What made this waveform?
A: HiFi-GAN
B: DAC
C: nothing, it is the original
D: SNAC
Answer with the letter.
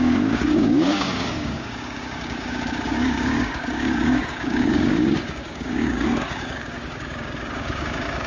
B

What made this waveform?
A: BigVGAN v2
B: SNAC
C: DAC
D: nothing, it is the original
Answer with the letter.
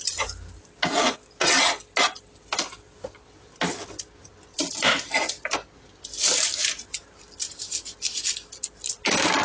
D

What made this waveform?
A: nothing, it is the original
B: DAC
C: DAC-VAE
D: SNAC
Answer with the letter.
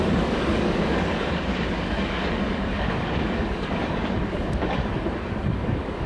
B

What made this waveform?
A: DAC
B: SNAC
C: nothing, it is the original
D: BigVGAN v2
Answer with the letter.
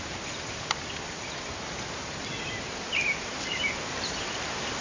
C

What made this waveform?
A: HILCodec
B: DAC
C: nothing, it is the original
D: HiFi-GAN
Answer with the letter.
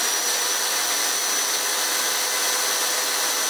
C